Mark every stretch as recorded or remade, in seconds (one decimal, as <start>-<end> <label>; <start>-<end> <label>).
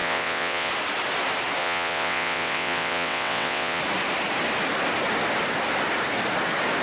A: 0.0-0.7 remade; 0.7-1.6 recorded; 1.6-3.8 remade; 3.8-6.8 recorded